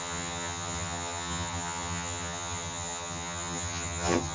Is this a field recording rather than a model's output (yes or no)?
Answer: no